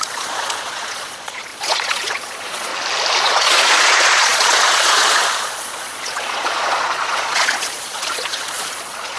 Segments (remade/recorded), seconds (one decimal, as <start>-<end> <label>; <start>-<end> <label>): 0.0-2.7 remade; 2.7-3.2 recorded; 3.2-9.2 remade